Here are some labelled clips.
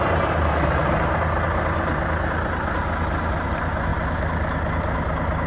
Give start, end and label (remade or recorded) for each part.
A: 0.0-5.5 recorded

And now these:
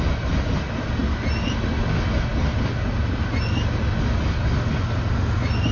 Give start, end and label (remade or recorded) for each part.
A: 0.0-5.7 recorded

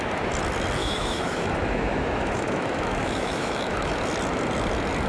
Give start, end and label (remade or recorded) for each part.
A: 0.0-0.8 recorded; 0.8-3.9 remade; 3.9-5.1 recorded

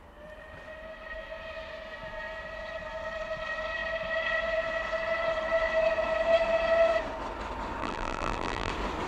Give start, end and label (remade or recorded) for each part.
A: 0.0-7.8 recorded; 7.8-8.7 remade; 8.7-9.1 recorded

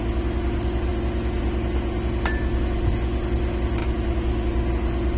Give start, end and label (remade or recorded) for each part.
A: 0.0-5.2 recorded